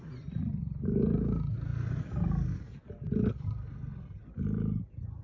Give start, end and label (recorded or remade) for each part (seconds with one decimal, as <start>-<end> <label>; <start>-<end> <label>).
0.0-5.2 recorded